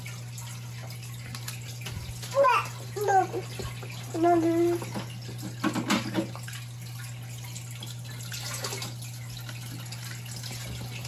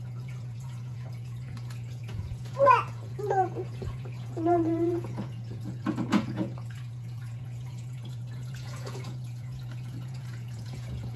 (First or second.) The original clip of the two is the first